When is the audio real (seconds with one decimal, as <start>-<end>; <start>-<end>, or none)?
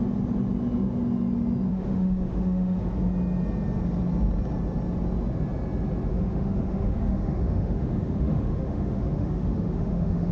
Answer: 0.0-1.7; 2.9-6.1